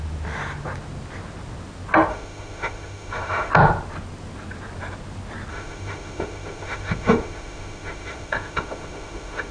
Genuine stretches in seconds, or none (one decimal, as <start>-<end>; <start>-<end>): 0.0-2.1; 3.5-5.5